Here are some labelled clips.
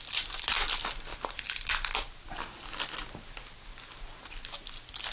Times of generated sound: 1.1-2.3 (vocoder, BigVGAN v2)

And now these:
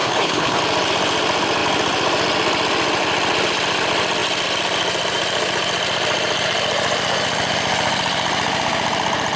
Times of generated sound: 0.0-0.6 (codec, HILCodec)

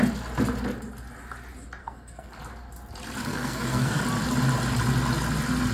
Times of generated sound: 1.8-2.4 (codec, SNAC); 3.2-4.0

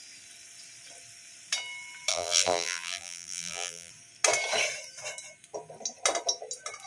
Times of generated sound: 2.1-3.9 (vocoder, BigVGAN v2)